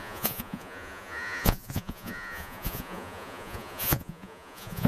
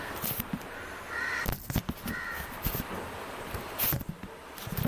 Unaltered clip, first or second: second